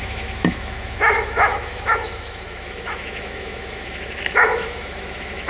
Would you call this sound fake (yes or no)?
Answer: yes